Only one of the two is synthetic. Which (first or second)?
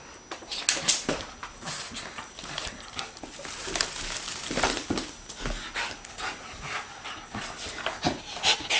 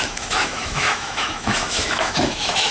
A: second